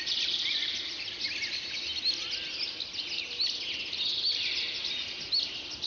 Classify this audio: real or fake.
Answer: real